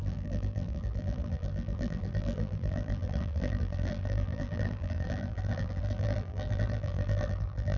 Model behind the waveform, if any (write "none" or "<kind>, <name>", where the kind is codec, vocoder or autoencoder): vocoder, BigVGAN v2